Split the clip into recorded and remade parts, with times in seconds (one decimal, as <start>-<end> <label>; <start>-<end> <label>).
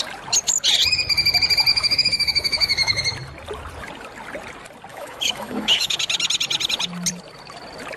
0.0-1.7 recorded; 1.7-3.0 remade; 3.0-4.9 recorded; 4.9-6.0 remade; 6.0-8.0 recorded